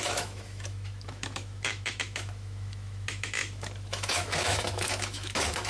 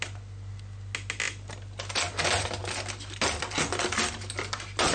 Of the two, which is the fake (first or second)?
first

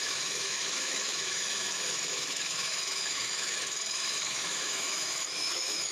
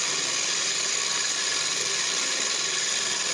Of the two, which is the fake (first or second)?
first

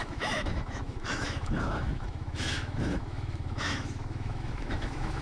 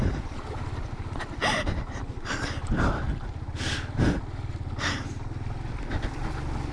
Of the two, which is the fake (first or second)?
first